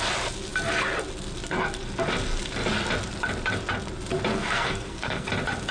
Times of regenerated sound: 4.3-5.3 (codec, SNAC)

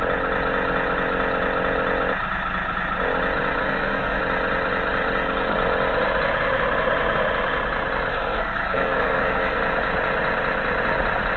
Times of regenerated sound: 3.6-4.2 (codec, SNAC); 8.1-9.6

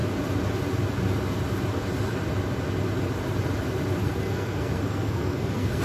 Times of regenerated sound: 4.0-5.8 (codec, SNAC)

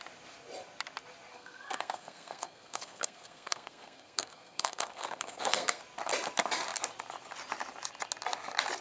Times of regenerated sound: 1.3-5.8 (codec, SNAC)

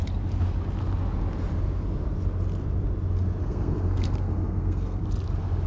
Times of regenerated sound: 3.4-5.0 (codec, SNAC)

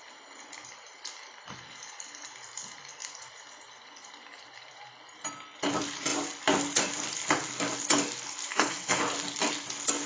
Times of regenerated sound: 8.5-9.0 (codec, SNAC)